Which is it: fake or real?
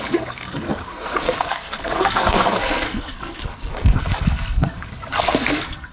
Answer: fake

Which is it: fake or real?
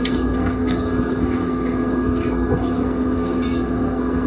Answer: fake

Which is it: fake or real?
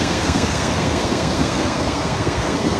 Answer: fake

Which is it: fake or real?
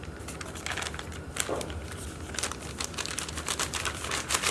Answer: real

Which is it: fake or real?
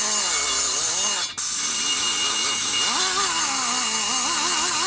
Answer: real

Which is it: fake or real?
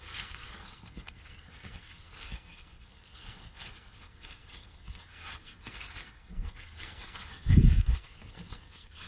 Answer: fake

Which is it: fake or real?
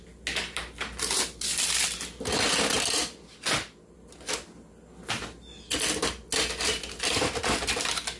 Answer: real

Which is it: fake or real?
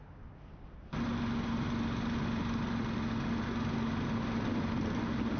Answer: real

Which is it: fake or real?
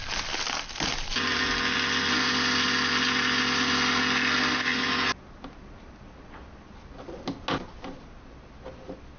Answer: real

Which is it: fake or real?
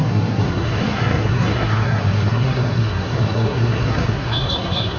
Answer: fake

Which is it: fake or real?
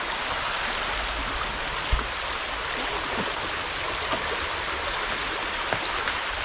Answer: real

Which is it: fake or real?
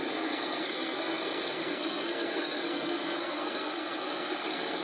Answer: fake